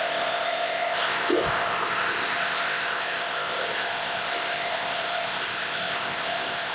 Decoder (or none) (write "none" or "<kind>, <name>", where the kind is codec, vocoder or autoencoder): codec, ZipCodec